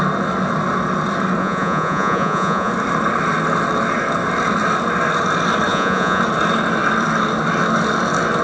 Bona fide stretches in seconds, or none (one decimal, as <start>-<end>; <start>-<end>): 0.0-1.4; 2.7-5.7; 6.2-8.4

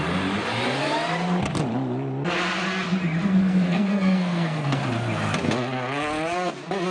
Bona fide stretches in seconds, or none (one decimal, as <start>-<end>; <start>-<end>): 0.0-3.3; 4.8-6.9